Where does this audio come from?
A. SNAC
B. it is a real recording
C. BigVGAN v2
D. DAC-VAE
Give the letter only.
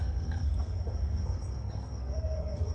A